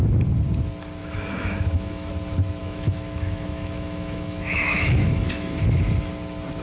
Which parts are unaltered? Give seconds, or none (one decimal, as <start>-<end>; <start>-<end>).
0.0-1.0; 2.1-2.6; 5.6-6.6